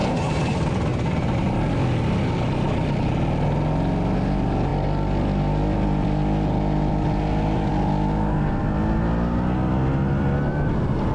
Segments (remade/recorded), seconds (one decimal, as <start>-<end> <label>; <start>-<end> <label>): 0.0-11.1 recorded